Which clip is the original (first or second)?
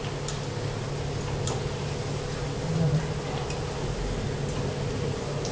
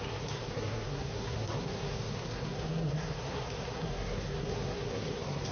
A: first